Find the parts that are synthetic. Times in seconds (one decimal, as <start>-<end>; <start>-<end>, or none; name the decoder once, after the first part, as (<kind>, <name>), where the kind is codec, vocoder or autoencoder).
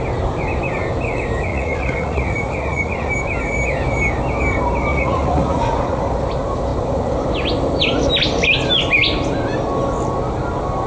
1.5-3.1 (vocoder, Vocos); 4.9-6.0